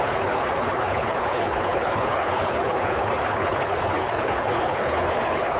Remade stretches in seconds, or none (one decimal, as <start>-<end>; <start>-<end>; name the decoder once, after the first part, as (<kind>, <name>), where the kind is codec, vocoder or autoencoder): 0.0-5.6 (codec, HILCodec)